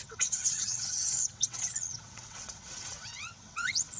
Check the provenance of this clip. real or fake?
fake